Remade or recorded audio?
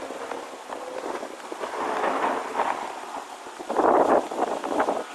recorded